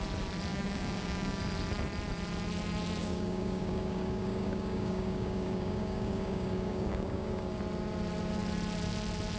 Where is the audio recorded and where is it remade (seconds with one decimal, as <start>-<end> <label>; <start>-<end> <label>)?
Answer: 0.0-0.5 recorded; 0.5-1.4 remade; 1.4-3.0 recorded; 3.0-7.6 remade; 7.6-9.4 recorded